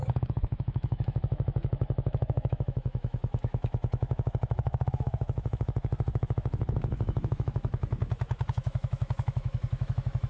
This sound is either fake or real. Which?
fake